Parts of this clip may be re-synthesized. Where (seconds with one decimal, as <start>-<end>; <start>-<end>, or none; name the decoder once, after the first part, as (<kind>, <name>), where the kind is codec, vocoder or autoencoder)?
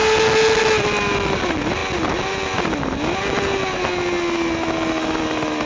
none